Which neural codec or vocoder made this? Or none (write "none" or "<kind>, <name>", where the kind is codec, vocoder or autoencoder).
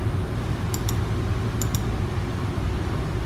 none